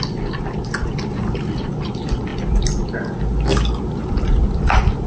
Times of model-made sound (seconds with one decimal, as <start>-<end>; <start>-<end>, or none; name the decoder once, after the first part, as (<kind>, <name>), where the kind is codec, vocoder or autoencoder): none